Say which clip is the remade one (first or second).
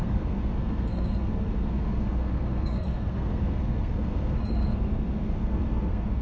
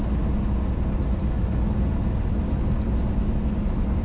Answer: first